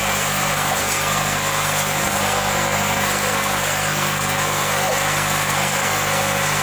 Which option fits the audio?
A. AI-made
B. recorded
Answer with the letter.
A